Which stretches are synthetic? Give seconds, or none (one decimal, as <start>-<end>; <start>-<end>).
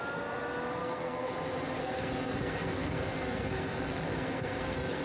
0.8-1.3; 1.8-5.0